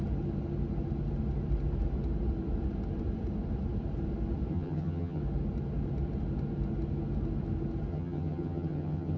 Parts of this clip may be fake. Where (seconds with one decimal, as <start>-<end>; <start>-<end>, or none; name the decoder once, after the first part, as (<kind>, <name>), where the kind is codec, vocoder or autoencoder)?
4.5-5.2 (vocoder, HiFi-GAN); 7.9-9.2